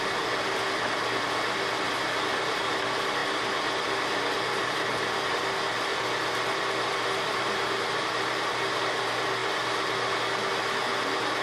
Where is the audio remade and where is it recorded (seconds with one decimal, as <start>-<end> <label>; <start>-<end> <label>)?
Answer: 0.0-11.4 recorded